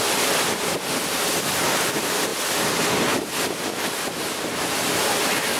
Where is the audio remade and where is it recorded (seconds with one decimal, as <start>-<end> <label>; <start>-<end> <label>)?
0.0-5.6 recorded